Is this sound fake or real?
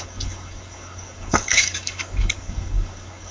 fake